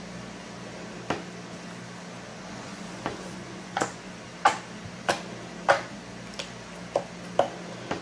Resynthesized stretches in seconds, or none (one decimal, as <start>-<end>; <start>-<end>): 2.3-4.1